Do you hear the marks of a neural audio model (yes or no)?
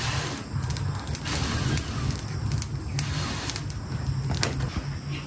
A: no